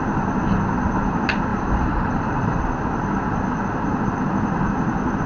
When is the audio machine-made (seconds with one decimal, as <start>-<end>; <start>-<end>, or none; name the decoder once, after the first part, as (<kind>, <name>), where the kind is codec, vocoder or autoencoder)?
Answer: 1.5-2.6 (vocoder, BigVGAN v2)